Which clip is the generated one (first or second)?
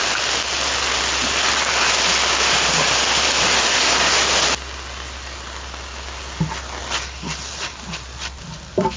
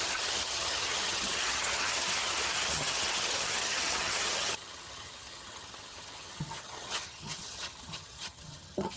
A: second